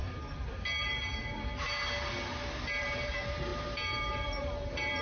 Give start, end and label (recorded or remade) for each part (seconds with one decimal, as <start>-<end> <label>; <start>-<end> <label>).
0.0-2.8 recorded; 2.8-5.0 remade

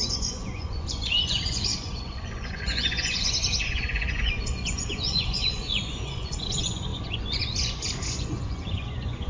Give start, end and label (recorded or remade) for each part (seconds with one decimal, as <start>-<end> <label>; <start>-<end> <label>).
0.0-9.3 remade

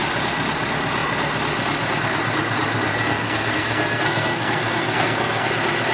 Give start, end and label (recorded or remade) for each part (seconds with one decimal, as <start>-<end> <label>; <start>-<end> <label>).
0.0-2.9 recorded; 2.9-5.5 remade; 5.5-5.9 recorded

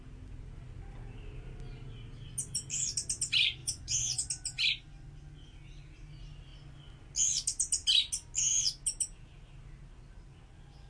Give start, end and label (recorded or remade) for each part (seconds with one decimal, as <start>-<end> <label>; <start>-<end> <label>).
0.0-3.6 recorded; 3.6-4.3 remade; 4.3-10.9 recorded

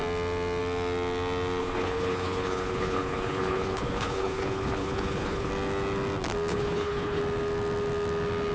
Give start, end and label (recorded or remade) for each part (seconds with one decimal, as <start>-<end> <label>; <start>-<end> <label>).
0.0-1.6 recorded; 1.6-5.5 remade; 5.5-6.5 recorded; 6.5-7.2 remade; 7.2-8.5 recorded

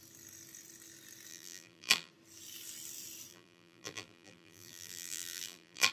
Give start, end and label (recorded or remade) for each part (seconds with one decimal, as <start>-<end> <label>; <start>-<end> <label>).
0.0-1.3 recorded; 1.3-2.1 remade; 2.1-3.3 recorded; 3.3-5.9 remade

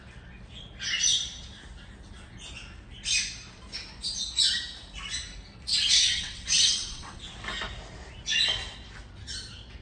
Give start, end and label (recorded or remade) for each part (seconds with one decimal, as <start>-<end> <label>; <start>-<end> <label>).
0.0-5.7 recorded; 5.7-7.2 remade; 7.2-9.8 recorded

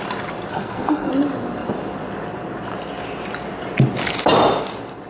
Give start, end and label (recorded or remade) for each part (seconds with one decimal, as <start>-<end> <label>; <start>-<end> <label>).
0.0-0.5 recorded; 0.5-1.1 remade; 1.1-5.1 recorded